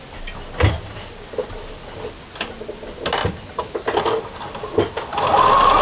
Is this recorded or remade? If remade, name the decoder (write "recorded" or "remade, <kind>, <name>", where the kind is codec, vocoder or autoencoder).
recorded